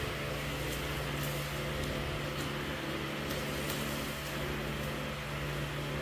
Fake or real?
real